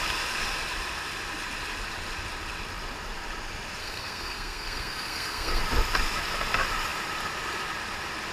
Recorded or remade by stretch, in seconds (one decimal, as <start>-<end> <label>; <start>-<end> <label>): 0.0-3.8 recorded; 3.8-5.6 remade; 5.6-8.3 recorded